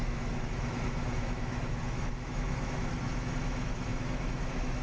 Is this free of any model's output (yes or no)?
no